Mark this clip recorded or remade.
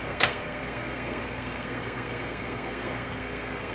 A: remade